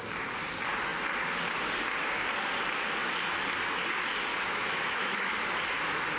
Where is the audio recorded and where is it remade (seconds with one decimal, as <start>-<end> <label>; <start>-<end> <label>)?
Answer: 0.0-4.3 recorded; 4.3-5.3 remade; 5.3-6.2 recorded